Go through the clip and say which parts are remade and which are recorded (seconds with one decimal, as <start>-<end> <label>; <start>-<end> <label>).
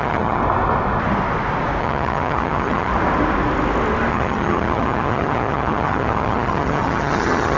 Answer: 0.0-0.4 remade; 0.4-1.8 recorded; 1.8-2.9 remade; 2.9-4.1 recorded; 4.1-7.6 remade